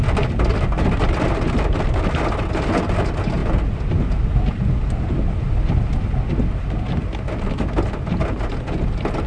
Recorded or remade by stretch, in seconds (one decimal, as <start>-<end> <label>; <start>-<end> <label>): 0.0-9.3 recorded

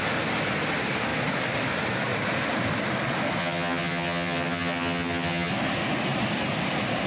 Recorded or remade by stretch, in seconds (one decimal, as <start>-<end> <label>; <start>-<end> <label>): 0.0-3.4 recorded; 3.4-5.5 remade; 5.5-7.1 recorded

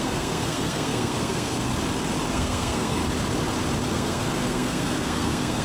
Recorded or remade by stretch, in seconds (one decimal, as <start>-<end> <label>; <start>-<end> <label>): 0.0-1.7 remade; 1.7-2.3 recorded; 2.3-3.0 remade; 3.0-3.9 recorded; 3.9-5.6 remade

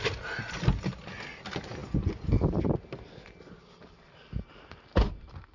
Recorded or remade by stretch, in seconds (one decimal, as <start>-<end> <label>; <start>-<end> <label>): 0.0-5.5 recorded